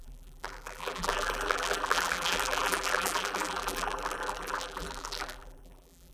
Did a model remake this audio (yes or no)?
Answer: yes